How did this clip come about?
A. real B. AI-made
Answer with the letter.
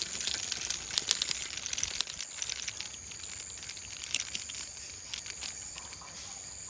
A